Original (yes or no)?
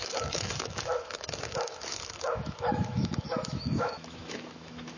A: no